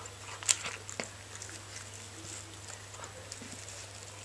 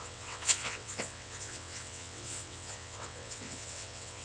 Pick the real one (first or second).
first